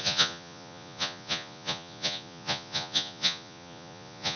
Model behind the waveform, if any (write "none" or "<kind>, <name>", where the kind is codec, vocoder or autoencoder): vocoder, Vocos